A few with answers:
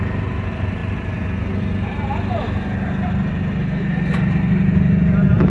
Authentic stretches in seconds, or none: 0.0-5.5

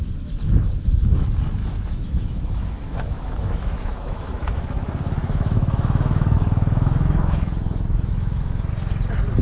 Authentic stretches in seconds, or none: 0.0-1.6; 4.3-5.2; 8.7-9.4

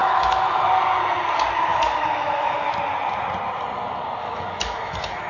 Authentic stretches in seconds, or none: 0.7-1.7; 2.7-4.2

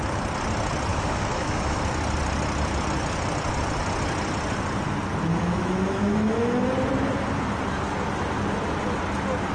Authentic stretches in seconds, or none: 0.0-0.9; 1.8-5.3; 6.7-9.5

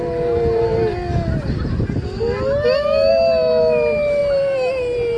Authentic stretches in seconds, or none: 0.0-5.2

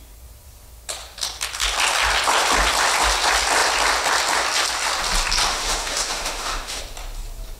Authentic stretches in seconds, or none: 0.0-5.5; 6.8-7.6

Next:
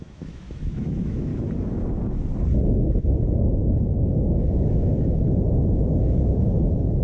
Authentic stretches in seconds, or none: 1.3-2.7

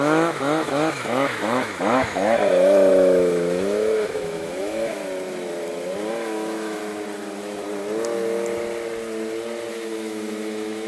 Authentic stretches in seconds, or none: 5.0-6.1; 6.8-9.7